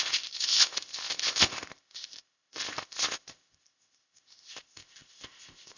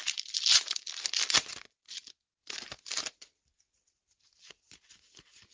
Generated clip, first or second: first